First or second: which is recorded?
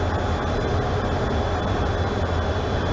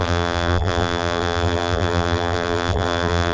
first